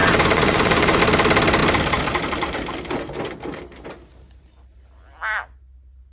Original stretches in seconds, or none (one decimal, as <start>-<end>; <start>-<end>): 1.0-6.1

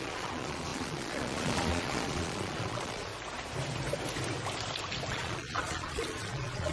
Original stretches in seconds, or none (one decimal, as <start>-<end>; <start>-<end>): 3.1-5.1

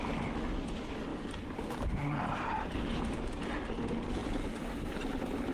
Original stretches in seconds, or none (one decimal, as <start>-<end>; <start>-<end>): 0.0-1.1; 3.5-5.5